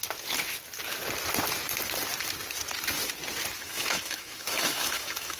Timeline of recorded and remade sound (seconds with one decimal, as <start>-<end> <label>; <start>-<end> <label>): 0.0-3.6 recorded; 3.6-5.4 remade